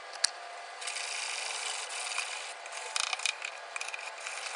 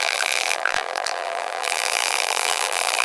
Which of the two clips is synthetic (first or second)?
second